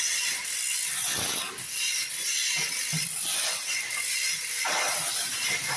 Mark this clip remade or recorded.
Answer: recorded